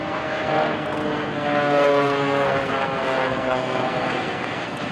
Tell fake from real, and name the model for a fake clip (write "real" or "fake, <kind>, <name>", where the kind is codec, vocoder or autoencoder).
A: fake, codec, SNAC